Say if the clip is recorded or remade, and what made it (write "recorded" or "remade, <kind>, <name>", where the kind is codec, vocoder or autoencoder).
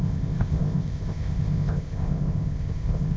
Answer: remade, codec, ZipCodec